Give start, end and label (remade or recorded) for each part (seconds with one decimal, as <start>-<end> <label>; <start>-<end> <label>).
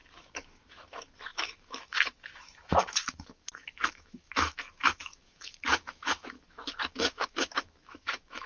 0.0-8.5 remade